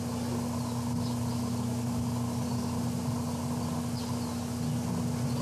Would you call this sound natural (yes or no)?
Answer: yes